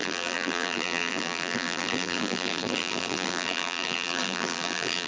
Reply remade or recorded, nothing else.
remade